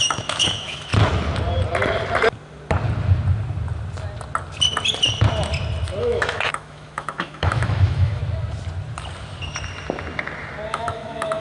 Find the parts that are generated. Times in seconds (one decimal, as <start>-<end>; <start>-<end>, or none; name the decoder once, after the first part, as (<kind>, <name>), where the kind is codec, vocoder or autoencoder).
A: 0.0-0.9 (autoencoder, DAC-VAE); 6.0-8.2; 10.7-11.4